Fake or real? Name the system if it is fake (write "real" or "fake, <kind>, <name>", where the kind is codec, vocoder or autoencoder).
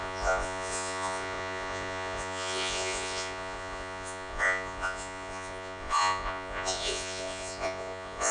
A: fake, vocoder, Vocos